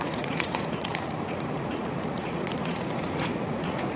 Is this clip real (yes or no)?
no